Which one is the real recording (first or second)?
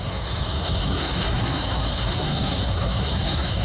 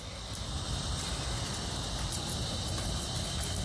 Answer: second